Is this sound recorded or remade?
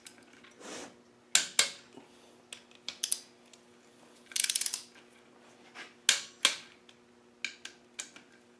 recorded